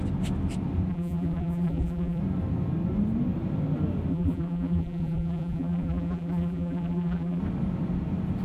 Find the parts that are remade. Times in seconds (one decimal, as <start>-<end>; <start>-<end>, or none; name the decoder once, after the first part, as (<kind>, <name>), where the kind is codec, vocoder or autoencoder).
0.9-2.2 (vocoder, BigVGAN v2); 4.1-7.4